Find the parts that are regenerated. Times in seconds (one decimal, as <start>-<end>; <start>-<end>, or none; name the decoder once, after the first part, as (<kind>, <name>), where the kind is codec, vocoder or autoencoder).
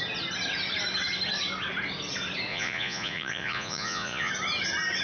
2.5-4.3 (vocoder, Vocos)